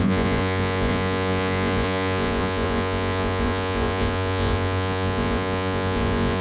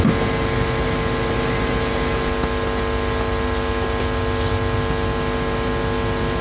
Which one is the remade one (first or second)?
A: first